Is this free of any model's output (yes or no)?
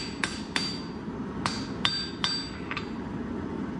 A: yes